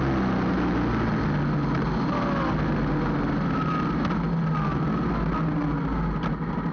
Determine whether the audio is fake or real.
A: real